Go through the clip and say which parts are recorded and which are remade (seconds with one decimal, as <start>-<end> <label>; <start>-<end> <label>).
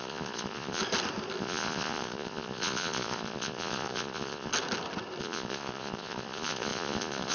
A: 0.0-0.8 remade; 0.8-1.4 recorded; 1.4-4.5 remade; 4.5-5.2 recorded; 5.2-7.3 remade